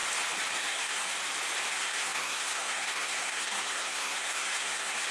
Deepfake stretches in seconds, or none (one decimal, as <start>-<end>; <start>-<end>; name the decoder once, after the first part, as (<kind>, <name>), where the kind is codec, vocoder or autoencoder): 0.5-1.1 (codec, SNAC); 1.7-5.1